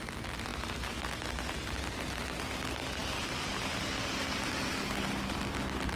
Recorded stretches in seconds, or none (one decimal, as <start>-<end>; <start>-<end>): 0.0-6.0